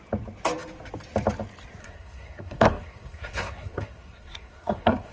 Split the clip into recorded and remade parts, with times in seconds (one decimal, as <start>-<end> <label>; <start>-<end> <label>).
0.0-1.8 recorded; 1.8-5.1 remade